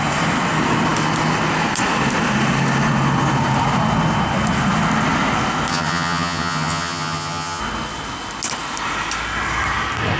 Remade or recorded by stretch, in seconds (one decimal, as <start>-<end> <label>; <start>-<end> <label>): 0.0-5.7 recorded; 5.7-7.6 remade; 7.6-10.2 recorded